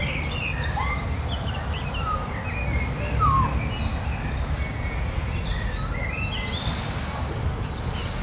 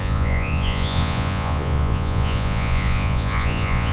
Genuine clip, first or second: first